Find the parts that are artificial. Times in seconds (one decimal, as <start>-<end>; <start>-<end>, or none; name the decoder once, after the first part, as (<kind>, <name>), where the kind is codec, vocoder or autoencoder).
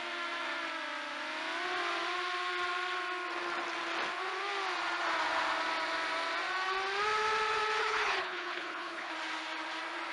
7.8-9.1 (codec, HILCodec)